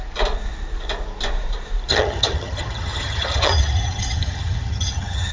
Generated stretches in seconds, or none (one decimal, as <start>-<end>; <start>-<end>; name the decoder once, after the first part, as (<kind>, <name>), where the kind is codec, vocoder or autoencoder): 1.9-5.3 (vocoder, HiFi-GAN)